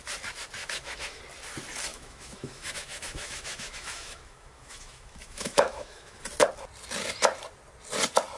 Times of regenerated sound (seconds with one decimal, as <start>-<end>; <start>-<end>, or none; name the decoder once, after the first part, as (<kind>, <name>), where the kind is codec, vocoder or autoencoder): 0.6-1.2 (autoencoder, DAC-VAE); 1.9-6.2